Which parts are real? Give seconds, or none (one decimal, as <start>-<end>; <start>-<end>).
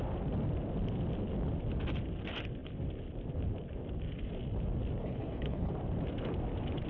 0.0-5.0; 5.7-6.9